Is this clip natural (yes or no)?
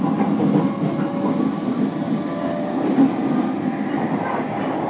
yes